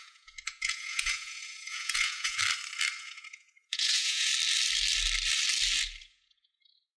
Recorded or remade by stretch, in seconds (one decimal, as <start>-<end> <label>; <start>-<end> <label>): 0.0-2.4 remade; 2.4-3.0 recorded; 3.0-4.3 remade; 4.3-6.0 recorded; 6.0-7.0 remade